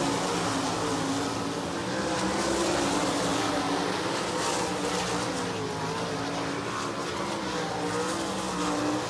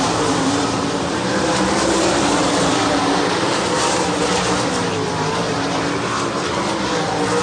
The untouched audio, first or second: first